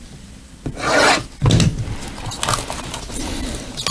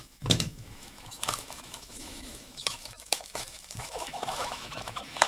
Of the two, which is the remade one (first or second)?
second